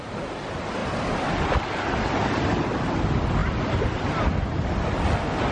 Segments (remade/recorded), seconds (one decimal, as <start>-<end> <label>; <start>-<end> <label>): 0.0-5.5 recorded